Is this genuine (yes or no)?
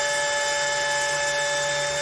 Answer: yes